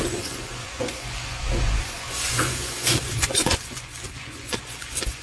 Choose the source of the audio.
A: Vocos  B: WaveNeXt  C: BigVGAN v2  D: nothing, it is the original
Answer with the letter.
A